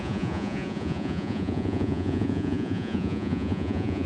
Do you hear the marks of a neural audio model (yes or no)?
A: yes